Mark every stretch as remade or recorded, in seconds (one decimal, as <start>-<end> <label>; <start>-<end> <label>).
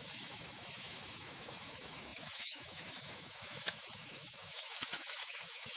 0.0-5.8 remade